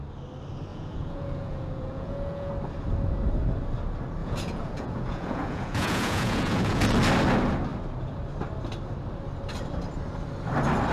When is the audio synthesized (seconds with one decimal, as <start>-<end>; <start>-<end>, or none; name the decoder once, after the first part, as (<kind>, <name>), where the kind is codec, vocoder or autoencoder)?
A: 0.7-2.5 (vocoder, Vocos); 4.2-6.8